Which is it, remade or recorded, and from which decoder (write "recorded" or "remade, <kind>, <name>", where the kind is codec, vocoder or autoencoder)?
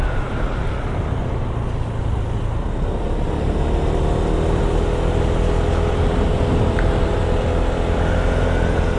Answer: recorded